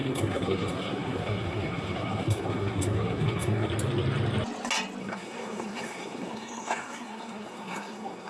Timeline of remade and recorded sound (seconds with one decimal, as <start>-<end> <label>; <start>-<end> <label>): 0.0-3.7 remade; 3.7-5.0 recorded; 5.0-8.3 remade